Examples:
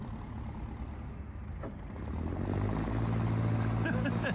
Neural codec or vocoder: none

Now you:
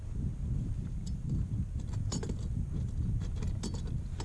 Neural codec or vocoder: none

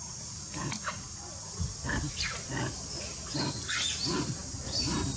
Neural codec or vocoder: none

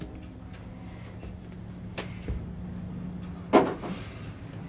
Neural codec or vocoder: none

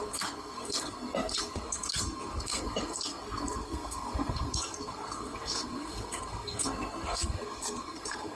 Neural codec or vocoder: codec, SNAC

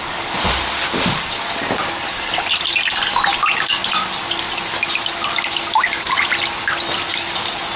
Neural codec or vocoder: none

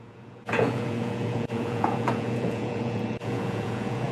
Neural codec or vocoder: vocoder, Vocos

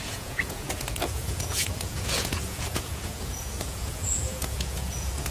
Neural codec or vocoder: vocoder, Vocos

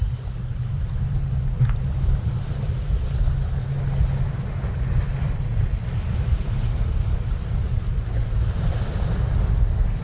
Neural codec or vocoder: none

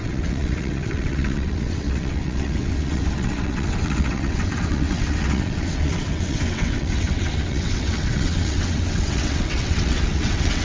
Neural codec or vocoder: vocoder, WaveNeXt